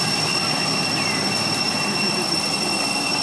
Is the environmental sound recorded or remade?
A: recorded